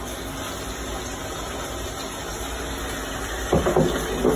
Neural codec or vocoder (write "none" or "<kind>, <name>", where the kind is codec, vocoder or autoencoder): none